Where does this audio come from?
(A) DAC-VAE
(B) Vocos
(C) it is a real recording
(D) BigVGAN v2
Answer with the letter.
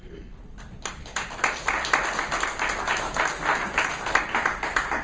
C